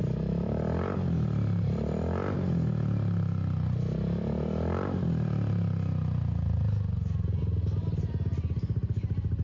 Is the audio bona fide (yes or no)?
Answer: yes